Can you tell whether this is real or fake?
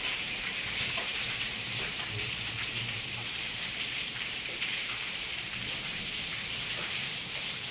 fake